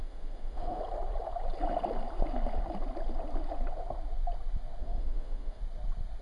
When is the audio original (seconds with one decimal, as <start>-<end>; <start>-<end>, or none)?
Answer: 0.8-4.8; 5.6-6.2